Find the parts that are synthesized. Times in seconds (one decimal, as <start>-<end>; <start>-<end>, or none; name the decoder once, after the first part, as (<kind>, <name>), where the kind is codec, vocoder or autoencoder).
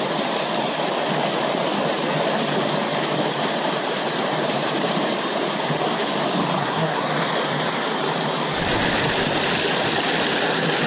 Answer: 6.6-7.1 (codec, SNAC)